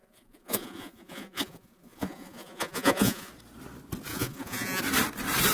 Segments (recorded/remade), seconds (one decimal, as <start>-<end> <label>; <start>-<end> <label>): 0.0-3.3 remade; 3.3-4.1 recorded; 4.1-4.8 remade; 4.8-5.5 recorded